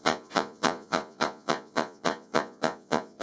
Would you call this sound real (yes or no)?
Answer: no